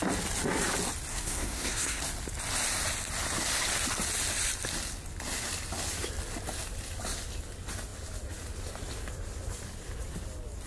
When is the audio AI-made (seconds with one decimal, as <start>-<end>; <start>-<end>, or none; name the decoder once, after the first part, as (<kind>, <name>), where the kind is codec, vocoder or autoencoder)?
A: 1.1-2.0 (codec, SNAC)